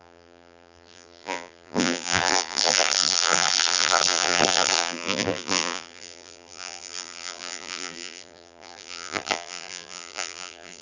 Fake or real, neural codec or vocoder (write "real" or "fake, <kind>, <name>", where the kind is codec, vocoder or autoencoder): fake, vocoder, BigVGAN v2